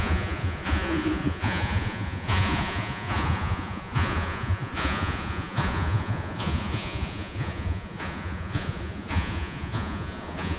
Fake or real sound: fake